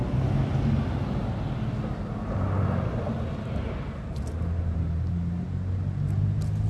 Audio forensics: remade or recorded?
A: recorded